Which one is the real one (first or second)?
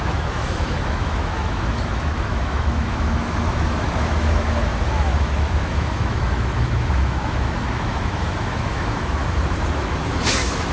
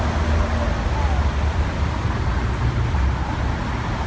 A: second